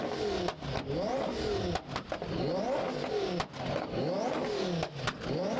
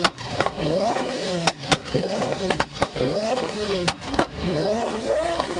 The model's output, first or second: second